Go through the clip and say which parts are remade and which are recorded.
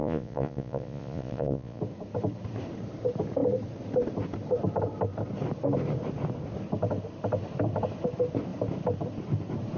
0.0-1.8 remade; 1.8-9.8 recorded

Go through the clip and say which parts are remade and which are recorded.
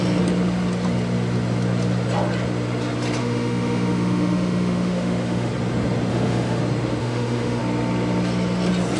0.0-3.2 recorded; 3.2-5.5 remade; 5.5-6.1 recorded; 6.1-6.6 remade; 6.6-7.0 recorded; 7.0-7.6 remade; 7.6-9.0 recorded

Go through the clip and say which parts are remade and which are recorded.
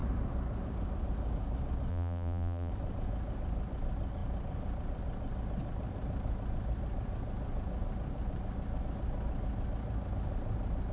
0.0-1.9 recorded; 1.9-2.7 remade; 2.7-10.9 recorded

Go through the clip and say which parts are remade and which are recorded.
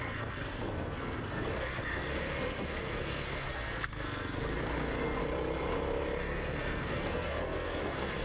0.0-5.2 remade; 5.2-6.2 recorded; 6.2-8.2 remade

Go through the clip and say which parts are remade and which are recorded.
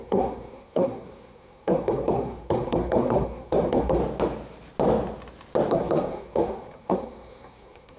0.0-4.0 remade; 4.0-5.7 recorded; 5.7-8.0 remade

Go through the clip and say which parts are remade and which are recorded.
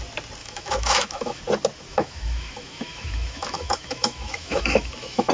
0.0-0.4 recorded; 0.4-1.4 remade; 1.4-1.9 recorded; 1.9-5.3 remade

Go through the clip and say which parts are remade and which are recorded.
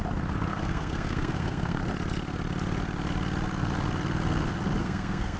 0.0-0.5 recorded; 0.5-1.8 remade; 1.8-4.8 recorded; 4.8-5.4 remade